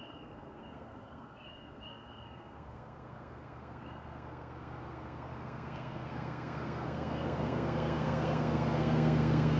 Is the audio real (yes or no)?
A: no